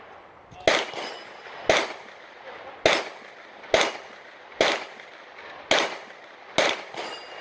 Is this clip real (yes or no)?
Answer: yes